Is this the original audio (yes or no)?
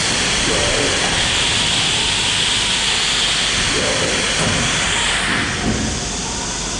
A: yes